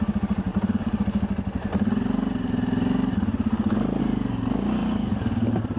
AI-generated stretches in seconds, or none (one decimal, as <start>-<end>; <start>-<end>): none